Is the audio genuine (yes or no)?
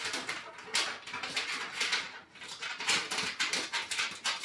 yes